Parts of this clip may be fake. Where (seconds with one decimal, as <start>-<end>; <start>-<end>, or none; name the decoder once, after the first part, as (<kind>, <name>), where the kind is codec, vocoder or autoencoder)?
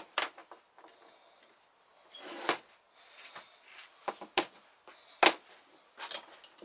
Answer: none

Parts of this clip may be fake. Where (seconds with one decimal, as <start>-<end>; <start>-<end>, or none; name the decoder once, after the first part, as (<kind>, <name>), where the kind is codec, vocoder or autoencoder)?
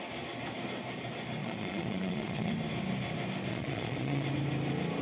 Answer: 1.4-2.5 (vocoder, Vocos); 3.5-4.3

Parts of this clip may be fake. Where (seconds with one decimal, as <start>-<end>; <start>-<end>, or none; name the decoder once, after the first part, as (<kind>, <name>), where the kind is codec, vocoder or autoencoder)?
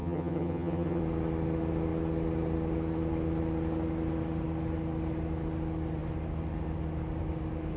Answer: 0.0-1.0 (vocoder, HiFi-GAN)